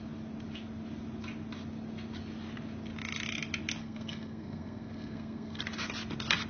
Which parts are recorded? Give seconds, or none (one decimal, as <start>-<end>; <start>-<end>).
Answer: 0.0-3.8; 5.6-6.5